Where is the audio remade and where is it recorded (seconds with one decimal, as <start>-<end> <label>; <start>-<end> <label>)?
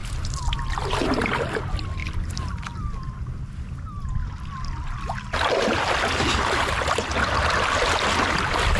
0.0-8.8 recorded